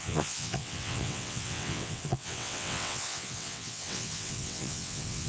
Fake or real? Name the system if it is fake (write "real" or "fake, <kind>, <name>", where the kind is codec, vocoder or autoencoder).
fake, vocoder, WaveNeXt